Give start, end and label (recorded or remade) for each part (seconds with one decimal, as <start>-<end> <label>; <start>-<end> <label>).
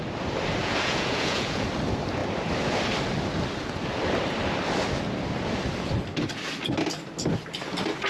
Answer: 0.0-0.6 recorded; 0.6-1.7 remade; 1.7-8.1 recorded